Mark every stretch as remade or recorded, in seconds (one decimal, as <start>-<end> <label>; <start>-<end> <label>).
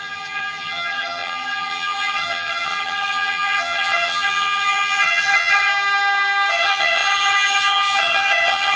0.0-5.7 remade; 5.7-6.5 recorded; 6.5-8.8 remade